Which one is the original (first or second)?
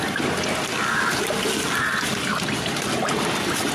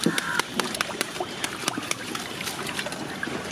first